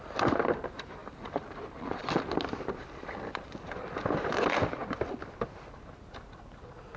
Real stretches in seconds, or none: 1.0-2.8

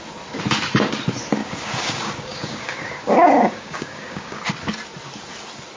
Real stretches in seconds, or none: 0.0-1.4; 4.4-5.8

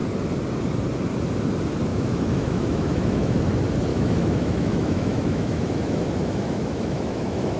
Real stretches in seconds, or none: 0.0-1.9; 3.4-3.9

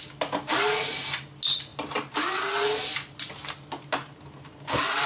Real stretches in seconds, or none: 0.0-5.1

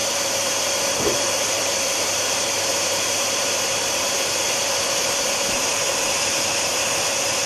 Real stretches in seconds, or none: 4.1-7.5

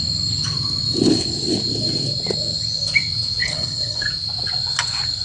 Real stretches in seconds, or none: 0.0-3.4; 4.0-5.2

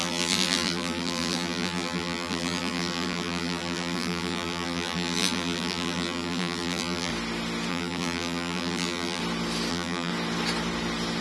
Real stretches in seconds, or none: 7.1-7.7; 9.2-9.7; 10.1-11.2

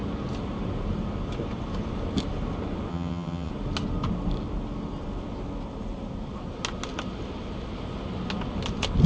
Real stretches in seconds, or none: 0.0-2.9; 3.5-9.1